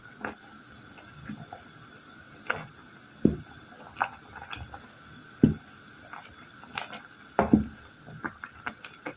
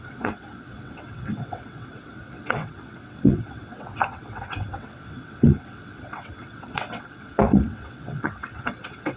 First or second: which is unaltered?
first